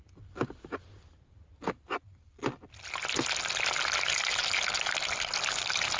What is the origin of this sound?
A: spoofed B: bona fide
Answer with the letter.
B